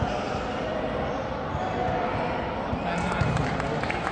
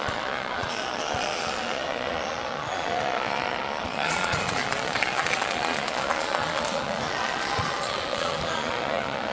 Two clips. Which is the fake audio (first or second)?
second